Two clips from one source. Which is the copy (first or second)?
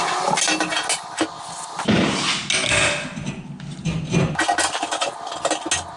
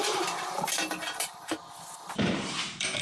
second